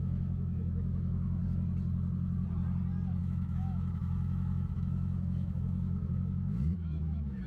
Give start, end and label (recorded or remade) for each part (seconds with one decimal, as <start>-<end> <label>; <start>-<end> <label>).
0.0-1.4 remade; 1.4-3.2 recorded; 3.2-7.5 remade